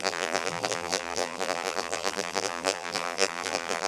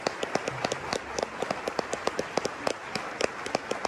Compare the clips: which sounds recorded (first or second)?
second